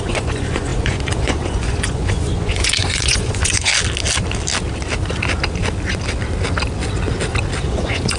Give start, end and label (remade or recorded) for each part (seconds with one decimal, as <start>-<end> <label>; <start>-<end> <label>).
0.0-3.7 remade; 3.7-7.6 recorded; 7.6-8.2 remade